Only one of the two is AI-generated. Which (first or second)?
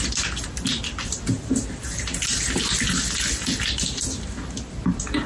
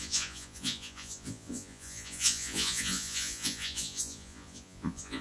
second